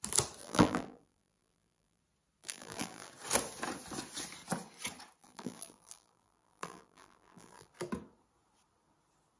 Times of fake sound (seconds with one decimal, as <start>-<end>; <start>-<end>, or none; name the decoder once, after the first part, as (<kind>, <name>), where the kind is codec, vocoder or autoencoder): 0.4-2.0 (vocoder, BigVGAN v2); 2.4-3.1; 5.2-7.7